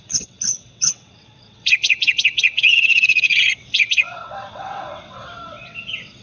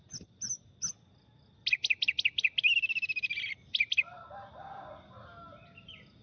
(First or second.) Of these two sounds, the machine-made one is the first